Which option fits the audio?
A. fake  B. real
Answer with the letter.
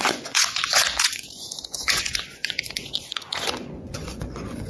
A